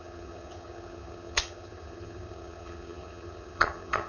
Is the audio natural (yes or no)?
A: no